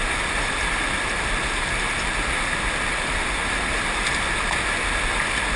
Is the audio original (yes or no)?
yes